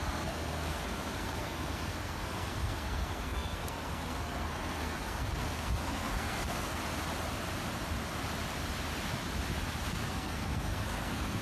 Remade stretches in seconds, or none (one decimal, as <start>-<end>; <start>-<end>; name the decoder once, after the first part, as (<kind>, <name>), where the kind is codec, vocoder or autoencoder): 0.0-6.8 (codec, SNAC); 9.9-11.4